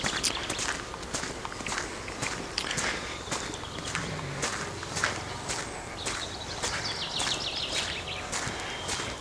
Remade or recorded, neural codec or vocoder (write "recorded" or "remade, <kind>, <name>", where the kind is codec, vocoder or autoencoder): recorded